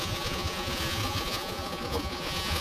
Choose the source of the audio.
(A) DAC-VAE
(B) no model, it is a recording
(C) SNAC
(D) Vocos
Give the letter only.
D